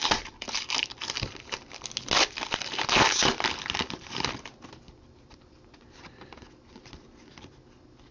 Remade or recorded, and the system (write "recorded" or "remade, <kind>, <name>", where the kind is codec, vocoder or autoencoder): recorded